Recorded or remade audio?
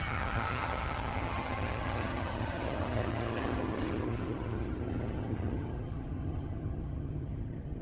remade